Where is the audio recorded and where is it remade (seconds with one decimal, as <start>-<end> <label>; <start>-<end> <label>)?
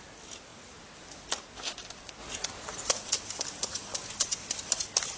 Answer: 0.0-2.2 recorded; 2.2-2.9 remade; 2.9-5.2 recorded